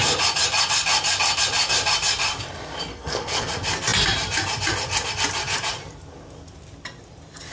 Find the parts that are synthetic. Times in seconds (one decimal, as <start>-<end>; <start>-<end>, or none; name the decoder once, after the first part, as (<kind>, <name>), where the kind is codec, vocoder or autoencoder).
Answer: 2.9-3.5 (codec, SNAC)

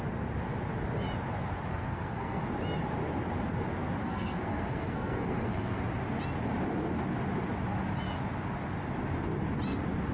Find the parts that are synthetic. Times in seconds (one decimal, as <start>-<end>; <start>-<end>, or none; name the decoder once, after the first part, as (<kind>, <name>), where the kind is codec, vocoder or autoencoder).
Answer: 1.7-2.4 (codec, SNAC); 4.0-5.8

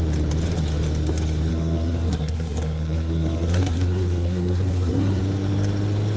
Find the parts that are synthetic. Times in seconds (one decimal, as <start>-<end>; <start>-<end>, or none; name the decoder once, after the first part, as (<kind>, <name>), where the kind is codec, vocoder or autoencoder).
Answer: 1.5-5.2 (codec, SNAC)